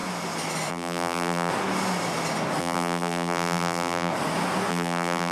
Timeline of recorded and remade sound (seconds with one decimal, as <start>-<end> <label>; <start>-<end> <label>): 0.0-0.7 recorded; 0.7-1.5 remade; 1.5-2.6 recorded; 2.6-4.1 remade; 4.1-4.7 recorded; 4.7-5.3 remade